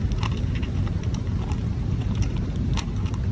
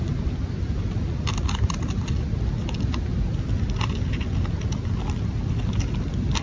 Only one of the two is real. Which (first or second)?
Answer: second